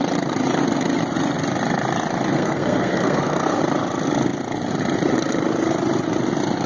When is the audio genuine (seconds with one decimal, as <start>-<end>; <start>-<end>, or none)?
0.0-2.3; 3.6-6.7